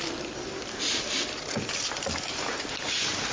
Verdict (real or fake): real